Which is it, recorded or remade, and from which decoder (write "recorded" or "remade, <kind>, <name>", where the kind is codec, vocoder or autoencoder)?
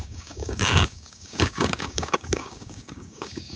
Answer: remade, codec, DAC